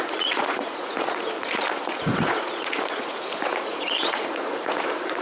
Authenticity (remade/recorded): remade